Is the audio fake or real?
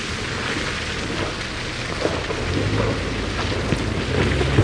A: real